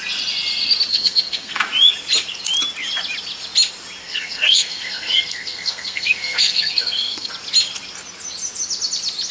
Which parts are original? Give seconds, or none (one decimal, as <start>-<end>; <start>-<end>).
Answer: 0.0-0.9; 1.6-4.0; 7.3-9.3